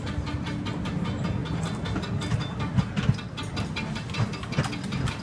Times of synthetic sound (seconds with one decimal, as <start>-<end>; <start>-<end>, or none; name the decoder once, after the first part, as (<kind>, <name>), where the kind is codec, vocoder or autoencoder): none